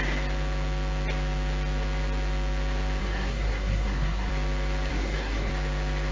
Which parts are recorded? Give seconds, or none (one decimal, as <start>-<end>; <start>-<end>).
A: 0.0-3.0; 4.3-4.9; 5.5-6.1